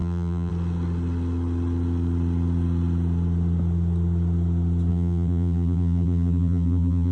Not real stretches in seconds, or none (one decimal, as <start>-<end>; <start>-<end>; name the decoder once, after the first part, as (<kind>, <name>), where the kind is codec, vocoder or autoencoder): 0.0-0.5 (vocoder, BigVGAN v2); 4.9-7.1